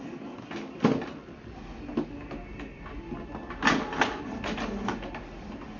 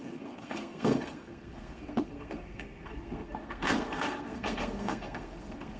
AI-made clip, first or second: second